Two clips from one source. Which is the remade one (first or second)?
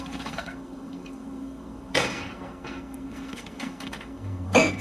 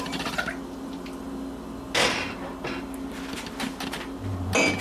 first